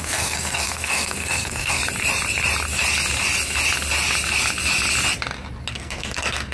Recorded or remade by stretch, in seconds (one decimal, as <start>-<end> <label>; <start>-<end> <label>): 0.0-1.8 remade; 1.8-5.7 recorded; 5.7-6.5 remade